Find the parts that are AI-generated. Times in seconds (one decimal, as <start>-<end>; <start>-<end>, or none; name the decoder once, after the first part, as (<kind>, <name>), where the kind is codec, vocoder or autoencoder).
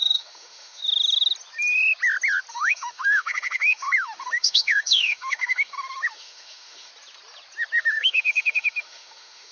0.0-0.8 (autoencoder, DAC-VAE); 2.5-6.9; 7.8-9.5